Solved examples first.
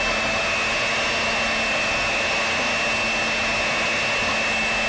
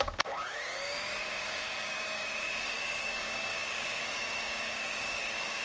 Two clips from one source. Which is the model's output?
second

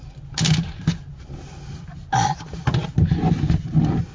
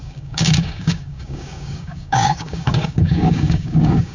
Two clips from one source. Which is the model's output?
second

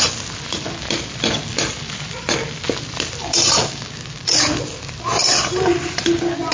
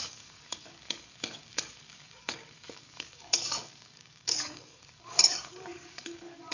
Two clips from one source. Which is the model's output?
second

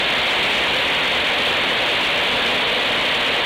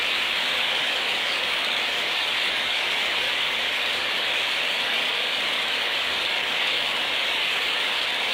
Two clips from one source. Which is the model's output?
second